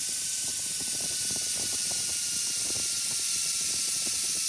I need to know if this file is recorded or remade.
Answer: recorded